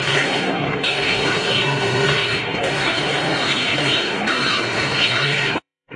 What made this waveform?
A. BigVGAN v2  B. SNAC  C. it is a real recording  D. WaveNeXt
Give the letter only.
B